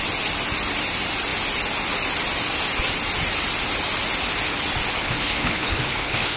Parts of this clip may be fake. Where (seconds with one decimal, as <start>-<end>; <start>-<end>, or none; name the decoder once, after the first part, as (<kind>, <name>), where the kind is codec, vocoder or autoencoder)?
5.0-6.4 (codec, HILCodec)